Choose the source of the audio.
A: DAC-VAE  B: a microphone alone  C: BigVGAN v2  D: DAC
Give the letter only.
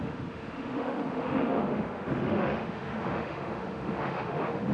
A